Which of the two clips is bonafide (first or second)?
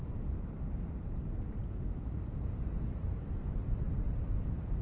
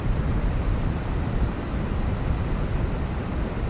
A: first